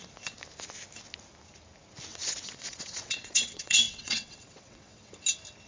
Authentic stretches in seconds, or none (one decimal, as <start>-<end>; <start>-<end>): 0.0-2.1; 5.1-5.7